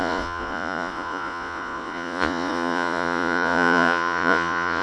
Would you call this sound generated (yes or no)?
yes